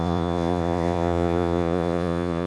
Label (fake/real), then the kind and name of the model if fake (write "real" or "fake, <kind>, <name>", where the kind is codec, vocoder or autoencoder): fake, vocoder, Vocos